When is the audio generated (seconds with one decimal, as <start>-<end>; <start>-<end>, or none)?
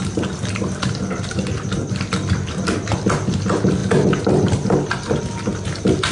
none